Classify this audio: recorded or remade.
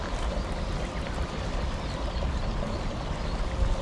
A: recorded